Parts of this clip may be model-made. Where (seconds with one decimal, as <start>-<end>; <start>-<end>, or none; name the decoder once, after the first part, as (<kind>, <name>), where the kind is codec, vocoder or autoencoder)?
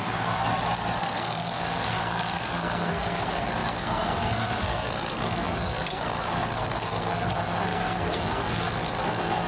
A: 0.0-0.5 (codec, SNAC); 1.0-9.5